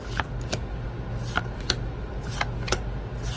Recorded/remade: recorded